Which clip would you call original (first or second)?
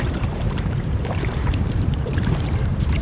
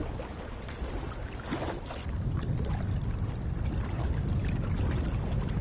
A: second